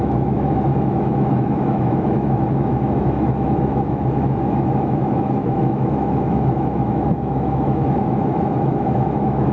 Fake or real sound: fake